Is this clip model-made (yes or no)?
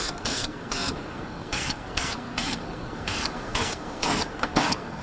yes